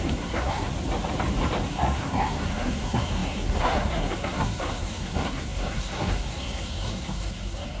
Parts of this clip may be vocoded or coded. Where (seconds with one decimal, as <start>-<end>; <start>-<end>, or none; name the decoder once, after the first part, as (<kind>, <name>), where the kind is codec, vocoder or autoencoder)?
0.0-0.7 (codec, SNAC); 1.7-7.8